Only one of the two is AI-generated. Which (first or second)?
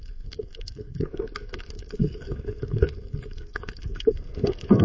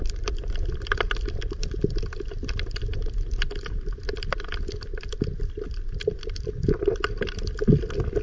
first